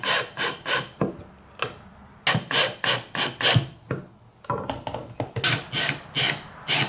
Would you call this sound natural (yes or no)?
yes